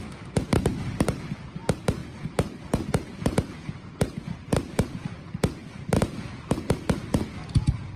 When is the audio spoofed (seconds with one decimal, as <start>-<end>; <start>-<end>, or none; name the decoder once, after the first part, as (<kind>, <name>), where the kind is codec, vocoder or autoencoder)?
0.5-1.2 (vocoder, BigVGAN v2); 5.6-6.1

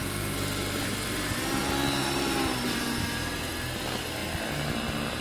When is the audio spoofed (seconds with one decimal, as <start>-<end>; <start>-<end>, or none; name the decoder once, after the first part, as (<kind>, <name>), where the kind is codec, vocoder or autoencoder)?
0.0-1.6 (vocoder, BigVGAN v2); 2.0-3.5

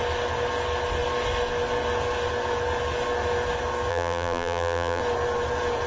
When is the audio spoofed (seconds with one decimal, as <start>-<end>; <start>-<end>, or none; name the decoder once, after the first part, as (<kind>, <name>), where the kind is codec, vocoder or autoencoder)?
3.9-5.0 (vocoder, BigVGAN v2)